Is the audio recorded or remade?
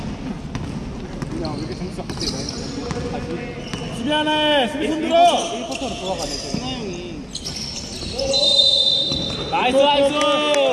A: recorded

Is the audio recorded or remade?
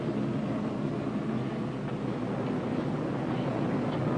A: recorded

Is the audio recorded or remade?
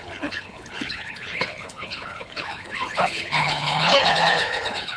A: remade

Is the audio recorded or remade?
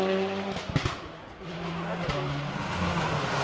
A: recorded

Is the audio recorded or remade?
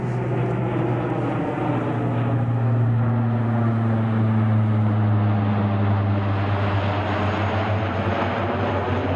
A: recorded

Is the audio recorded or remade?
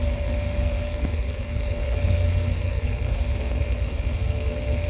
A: remade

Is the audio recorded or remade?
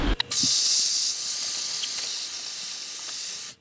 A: recorded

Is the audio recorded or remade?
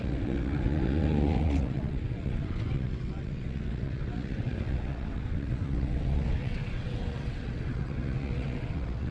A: remade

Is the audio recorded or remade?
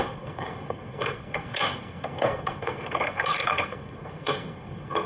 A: remade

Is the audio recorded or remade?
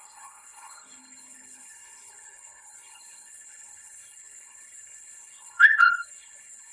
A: remade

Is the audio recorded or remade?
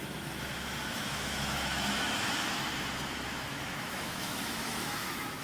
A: remade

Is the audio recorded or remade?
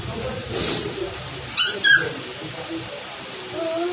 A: remade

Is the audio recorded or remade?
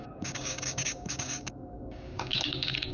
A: remade